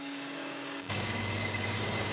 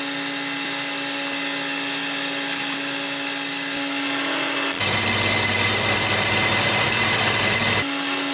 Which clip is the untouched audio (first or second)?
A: second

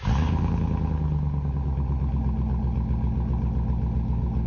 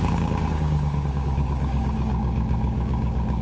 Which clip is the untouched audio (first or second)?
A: first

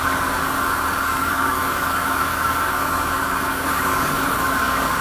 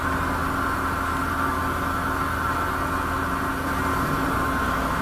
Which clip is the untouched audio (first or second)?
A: second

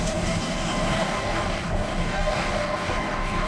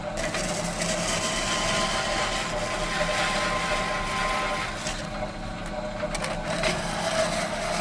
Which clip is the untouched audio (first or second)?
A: second